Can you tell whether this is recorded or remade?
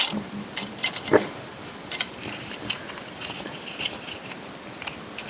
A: remade